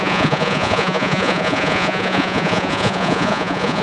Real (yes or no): no